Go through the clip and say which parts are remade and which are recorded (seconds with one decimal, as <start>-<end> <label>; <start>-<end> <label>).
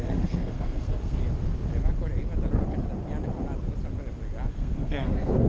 0.0-1.2 remade; 1.2-4.5 recorded; 4.5-5.5 remade